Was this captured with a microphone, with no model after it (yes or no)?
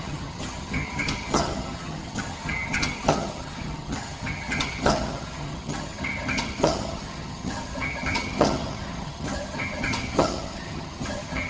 no